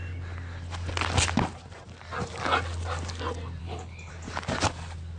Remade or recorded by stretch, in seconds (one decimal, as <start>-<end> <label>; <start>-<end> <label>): 0.0-3.6 recorded; 3.6-4.1 remade; 4.1-5.2 recorded